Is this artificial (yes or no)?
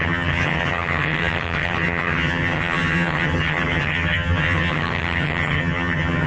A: yes